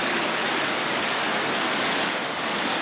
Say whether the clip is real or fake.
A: fake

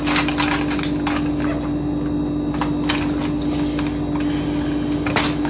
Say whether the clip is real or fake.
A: real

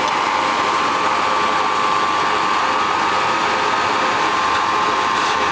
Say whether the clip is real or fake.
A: real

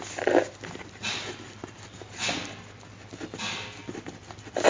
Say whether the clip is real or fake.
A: real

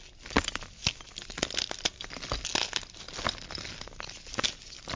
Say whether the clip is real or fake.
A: real